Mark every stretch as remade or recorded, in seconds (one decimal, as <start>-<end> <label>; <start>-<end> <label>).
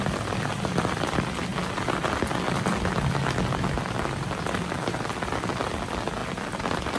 0.0-7.0 recorded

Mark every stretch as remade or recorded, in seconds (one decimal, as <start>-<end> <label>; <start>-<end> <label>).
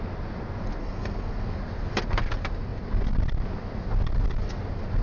0.0-0.8 recorded; 0.8-1.6 remade; 1.6-5.0 recorded